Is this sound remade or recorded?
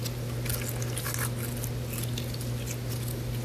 recorded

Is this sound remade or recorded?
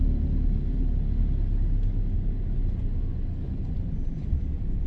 recorded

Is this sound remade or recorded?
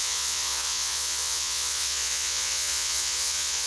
remade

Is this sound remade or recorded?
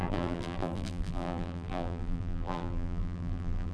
remade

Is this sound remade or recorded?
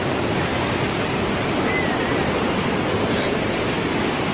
recorded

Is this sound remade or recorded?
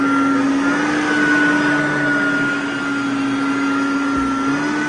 recorded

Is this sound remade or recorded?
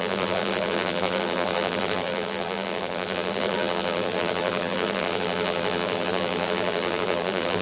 remade